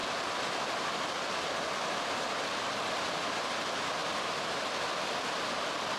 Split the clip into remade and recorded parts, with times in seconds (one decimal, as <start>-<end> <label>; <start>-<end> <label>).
0.0-6.0 recorded